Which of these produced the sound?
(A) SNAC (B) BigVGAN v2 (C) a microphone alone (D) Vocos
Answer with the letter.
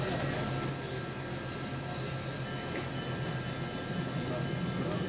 C